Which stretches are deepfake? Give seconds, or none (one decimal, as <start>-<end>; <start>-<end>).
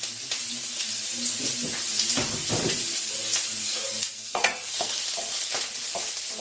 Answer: 3.6-5.0